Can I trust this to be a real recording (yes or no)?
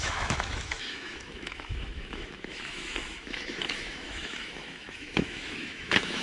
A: no